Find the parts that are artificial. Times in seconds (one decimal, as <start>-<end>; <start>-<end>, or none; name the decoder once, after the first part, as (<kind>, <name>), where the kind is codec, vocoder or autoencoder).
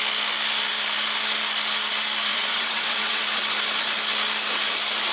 2.3-3.2 (vocoder, WaveNeXt)